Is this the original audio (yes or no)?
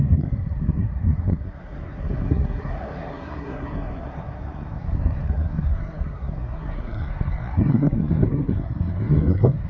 no